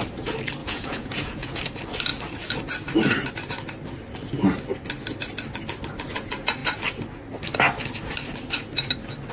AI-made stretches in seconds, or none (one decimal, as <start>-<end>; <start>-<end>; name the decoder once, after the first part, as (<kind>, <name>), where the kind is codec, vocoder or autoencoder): 0.6-1.6 (vocoder, Vocos)